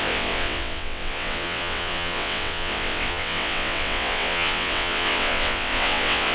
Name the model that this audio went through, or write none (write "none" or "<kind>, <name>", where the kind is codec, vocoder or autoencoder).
vocoder, WaveNeXt